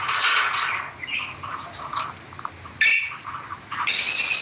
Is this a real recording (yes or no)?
yes